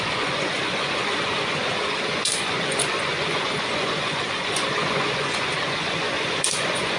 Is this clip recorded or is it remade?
remade